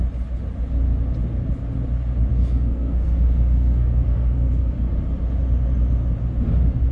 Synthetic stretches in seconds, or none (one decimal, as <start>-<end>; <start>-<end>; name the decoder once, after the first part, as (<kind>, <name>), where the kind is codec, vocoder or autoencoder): 2.3-4.9 (codec, SNAC)